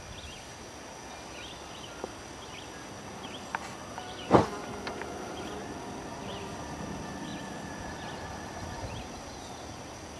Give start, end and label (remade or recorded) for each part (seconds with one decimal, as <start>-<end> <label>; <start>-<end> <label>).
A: 0.0-10.2 recorded